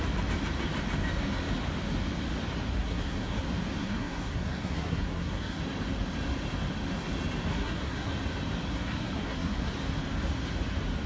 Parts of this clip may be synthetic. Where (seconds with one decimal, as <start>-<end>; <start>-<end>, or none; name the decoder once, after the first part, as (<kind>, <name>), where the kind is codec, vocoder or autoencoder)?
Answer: 2.7-3.4 (codec, SNAC); 3.8-5.6; 7.5-8.1; 8.7-9.7